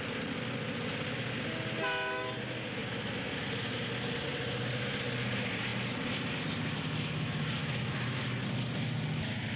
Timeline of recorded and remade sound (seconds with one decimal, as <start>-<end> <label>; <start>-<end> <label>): 0.0-7.6 recorded; 7.6-8.2 remade; 8.2-9.6 recorded